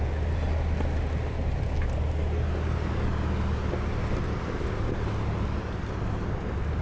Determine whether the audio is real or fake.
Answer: real